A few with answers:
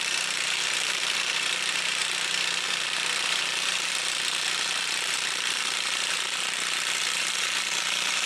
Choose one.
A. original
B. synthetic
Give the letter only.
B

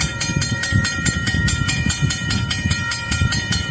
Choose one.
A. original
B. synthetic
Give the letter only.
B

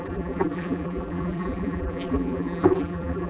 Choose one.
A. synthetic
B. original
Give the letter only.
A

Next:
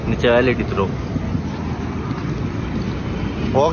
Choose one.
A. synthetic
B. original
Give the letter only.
B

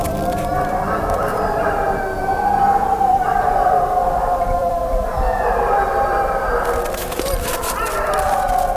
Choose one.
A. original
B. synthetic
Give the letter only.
B